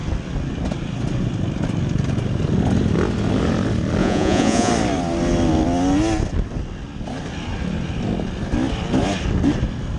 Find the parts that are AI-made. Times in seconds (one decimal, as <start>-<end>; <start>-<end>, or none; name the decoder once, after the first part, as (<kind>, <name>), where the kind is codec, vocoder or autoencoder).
4.0-4.7 (vocoder, Vocos)